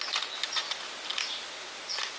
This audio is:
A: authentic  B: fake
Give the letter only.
A